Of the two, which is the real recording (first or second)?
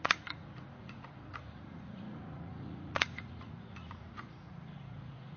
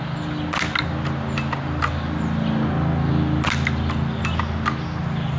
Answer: second